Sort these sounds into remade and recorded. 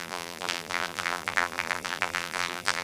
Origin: remade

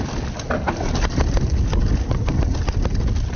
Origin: recorded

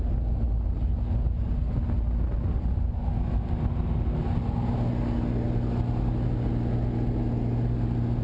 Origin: recorded